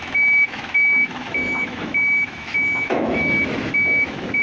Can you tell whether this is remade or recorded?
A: remade